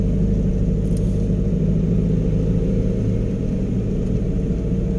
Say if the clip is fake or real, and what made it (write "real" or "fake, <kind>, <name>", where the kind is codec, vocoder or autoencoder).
real